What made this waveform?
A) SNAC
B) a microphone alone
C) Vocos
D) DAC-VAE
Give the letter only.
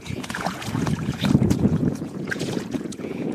C